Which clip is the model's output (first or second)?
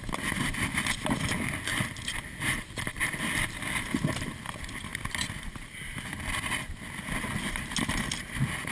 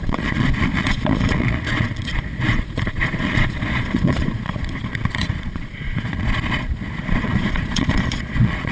second